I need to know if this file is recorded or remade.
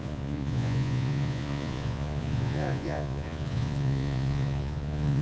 remade